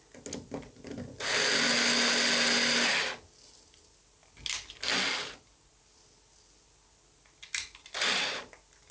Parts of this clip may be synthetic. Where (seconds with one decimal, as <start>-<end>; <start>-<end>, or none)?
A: none